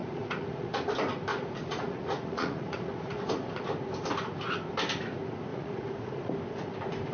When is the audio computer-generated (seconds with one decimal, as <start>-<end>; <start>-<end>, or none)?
0.0-0.9; 1.3-3.3; 5.5-6.3